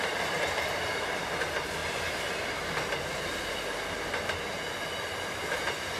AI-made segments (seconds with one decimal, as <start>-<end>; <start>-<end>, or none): none